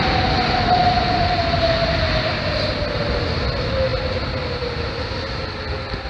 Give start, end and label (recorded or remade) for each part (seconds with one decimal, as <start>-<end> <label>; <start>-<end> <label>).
0.0-6.1 recorded